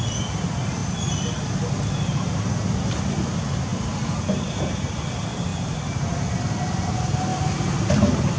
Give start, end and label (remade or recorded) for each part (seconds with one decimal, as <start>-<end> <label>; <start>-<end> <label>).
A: 0.0-3.7 recorded; 3.7-5.0 remade; 5.0-8.4 recorded